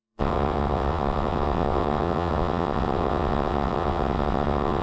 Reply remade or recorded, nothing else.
remade